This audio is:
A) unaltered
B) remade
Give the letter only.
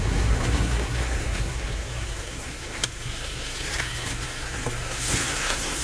B